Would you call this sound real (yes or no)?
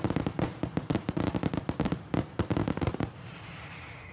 no